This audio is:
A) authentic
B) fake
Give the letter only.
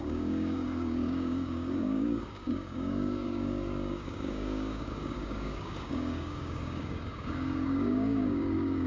B